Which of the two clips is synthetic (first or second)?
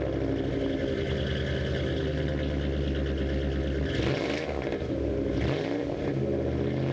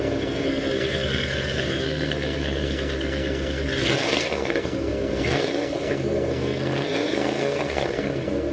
second